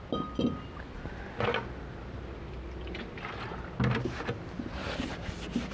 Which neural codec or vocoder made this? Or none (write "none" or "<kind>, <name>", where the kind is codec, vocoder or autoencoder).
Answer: none